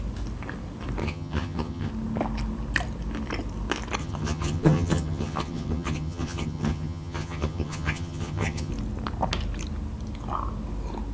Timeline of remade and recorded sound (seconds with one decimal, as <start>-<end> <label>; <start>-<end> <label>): 0.0-1.0 recorded; 1.0-1.9 remade; 1.9-4.0 recorded; 4.0-8.7 remade; 8.7-11.1 recorded